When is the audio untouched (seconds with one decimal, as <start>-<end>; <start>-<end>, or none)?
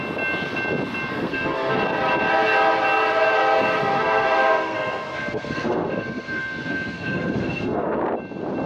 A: 0.0-1.1; 1.8-3.8; 8.0-8.7